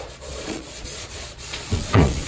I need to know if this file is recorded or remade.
remade